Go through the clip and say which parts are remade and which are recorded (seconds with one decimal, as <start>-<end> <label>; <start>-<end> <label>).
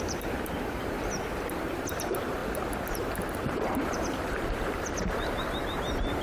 0.0-2.4 remade; 2.4-2.9 recorded; 2.9-6.2 remade